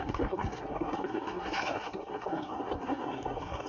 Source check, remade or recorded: remade